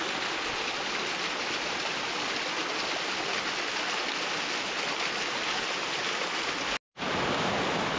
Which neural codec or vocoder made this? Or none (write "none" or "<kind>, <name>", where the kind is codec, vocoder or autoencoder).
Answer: none